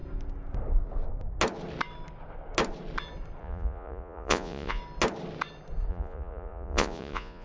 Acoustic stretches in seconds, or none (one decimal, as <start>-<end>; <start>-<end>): 0.0-3.4; 4.8-5.9